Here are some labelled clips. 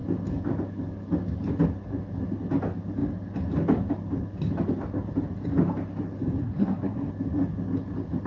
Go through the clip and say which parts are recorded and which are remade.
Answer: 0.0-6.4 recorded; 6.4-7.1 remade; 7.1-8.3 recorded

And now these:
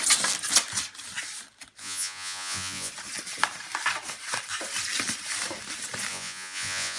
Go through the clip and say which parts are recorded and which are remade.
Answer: 0.0-1.8 recorded; 1.8-2.9 remade; 2.9-6.1 recorded; 6.1-7.0 remade

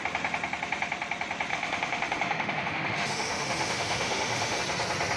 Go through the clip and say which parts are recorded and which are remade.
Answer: 0.0-1.5 recorded; 1.5-4.6 remade; 4.6-5.2 recorded